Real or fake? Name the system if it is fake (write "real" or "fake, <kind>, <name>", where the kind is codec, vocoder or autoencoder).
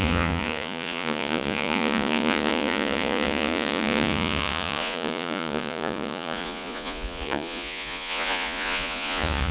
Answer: fake, vocoder, Vocos